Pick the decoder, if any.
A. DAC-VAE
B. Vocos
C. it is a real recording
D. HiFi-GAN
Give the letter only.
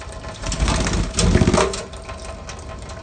C